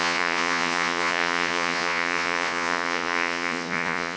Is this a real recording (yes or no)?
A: no